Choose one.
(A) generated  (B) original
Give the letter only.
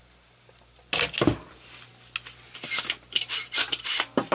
B